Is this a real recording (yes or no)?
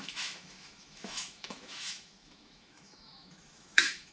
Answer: no